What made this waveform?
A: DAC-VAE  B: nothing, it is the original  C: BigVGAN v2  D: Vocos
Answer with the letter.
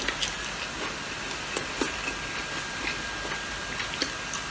B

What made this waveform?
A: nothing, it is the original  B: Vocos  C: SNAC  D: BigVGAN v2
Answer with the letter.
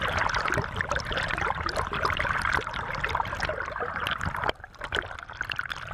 A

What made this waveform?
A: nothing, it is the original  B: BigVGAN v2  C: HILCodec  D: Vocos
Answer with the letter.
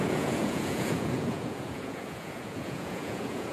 D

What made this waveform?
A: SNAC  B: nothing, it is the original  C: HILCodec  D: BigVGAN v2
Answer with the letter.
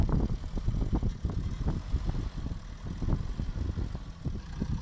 B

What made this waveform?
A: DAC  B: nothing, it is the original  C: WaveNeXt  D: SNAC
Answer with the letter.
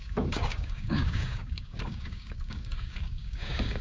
A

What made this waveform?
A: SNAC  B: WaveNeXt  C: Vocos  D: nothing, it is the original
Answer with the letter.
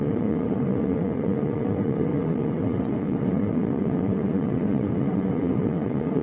B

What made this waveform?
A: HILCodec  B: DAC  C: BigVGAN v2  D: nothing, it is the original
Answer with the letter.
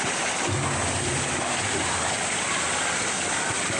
D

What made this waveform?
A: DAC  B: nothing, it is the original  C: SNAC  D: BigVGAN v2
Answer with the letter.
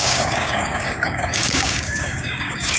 A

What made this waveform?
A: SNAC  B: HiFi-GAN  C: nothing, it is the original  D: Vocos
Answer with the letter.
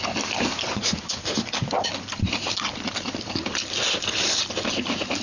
C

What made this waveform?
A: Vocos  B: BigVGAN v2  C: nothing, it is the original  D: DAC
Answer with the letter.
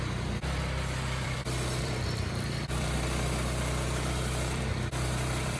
B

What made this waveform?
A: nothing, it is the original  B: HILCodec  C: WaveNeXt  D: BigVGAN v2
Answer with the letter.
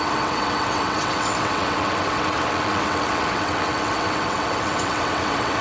C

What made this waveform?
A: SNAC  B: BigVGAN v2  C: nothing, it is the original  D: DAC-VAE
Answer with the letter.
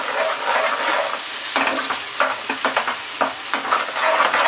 C